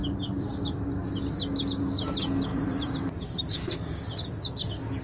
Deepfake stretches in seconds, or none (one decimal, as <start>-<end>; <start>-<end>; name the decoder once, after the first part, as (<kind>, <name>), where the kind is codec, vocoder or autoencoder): 2.5-3.4 (vocoder, BigVGAN v2)